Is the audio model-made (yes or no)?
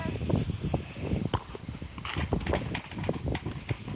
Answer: no